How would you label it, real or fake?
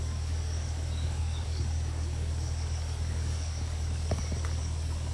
fake